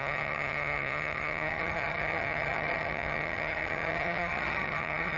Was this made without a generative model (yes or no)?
no